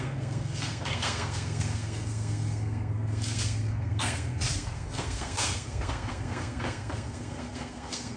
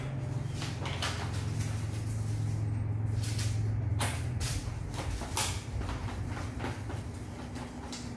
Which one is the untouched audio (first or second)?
second